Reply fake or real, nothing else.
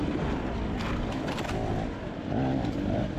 real